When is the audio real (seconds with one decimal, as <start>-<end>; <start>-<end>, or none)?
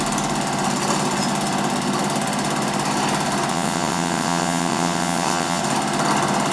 0.0-3.5; 5.6-6.5